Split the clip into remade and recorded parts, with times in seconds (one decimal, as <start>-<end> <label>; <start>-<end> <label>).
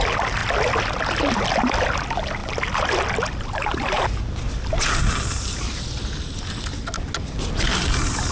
0.0-8.3 recorded